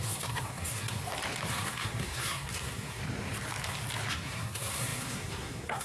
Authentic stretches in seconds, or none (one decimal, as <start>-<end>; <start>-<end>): 1.0-1.5; 3.0-4.1